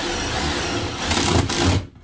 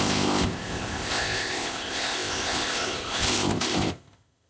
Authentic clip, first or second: first